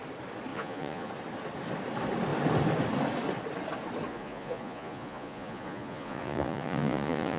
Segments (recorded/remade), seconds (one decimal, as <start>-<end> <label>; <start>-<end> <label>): 0.0-0.5 recorded; 0.5-1.1 remade; 1.1-4.1 recorded; 4.1-7.4 remade